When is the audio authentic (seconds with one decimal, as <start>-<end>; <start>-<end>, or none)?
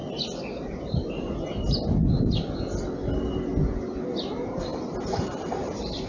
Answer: 0.0-4.7